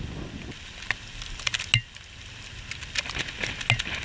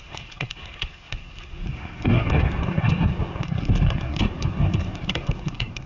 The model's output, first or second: second